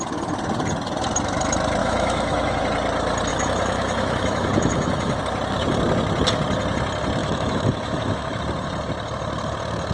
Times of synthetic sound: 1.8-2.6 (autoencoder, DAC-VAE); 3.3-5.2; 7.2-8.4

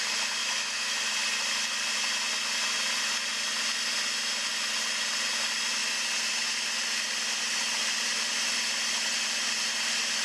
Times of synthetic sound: 0.4-1.0 (autoencoder, DAC-VAE)

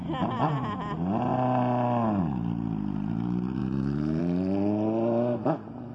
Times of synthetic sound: 3.6-4.2 (autoencoder, DAC-VAE)

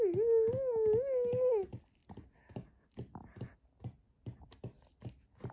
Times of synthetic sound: none

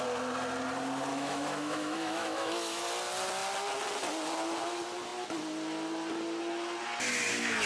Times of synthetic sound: 1.1-2.8 (autoencoder, DAC-VAE)

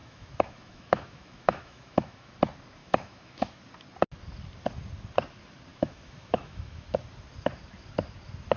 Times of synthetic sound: 0.0-2.3 (autoencoder, DAC-VAE); 2.8-3.6; 5.7-7.0

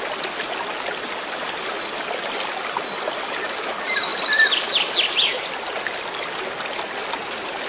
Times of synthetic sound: none

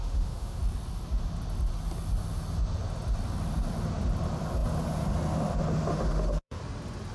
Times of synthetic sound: 0.0-0.6 (autoencoder, DAC-VAE); 5.9-6.6